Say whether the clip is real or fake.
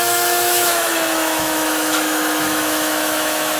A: fake